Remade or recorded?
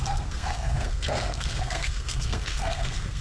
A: remade